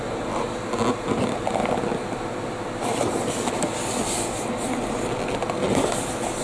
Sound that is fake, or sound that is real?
real